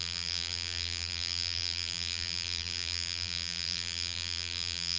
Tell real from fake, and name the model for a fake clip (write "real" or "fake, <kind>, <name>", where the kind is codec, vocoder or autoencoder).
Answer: fake, vocoder, BigVGAN v2